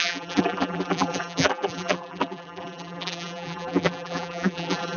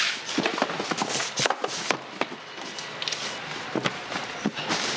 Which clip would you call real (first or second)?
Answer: second